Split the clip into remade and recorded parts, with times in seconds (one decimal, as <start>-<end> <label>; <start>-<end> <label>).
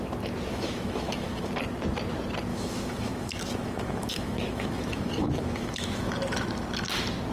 0.0-0.5 recorded; 0.5-1.5 remade; 1.5-2.5 recorded; 2.5-6.1 remade; 6.1-7.3 recorded